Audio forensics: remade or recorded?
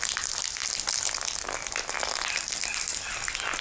recorded